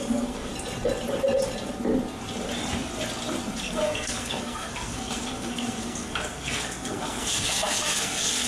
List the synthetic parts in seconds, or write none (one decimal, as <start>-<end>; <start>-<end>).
0.0-0.5; 3.6-8.5